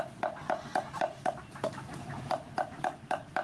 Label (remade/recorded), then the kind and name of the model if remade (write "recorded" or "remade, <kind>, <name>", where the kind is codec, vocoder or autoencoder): recorded